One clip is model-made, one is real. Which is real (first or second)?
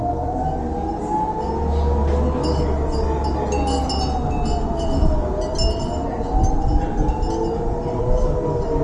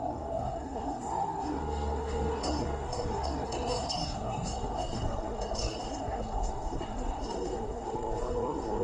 first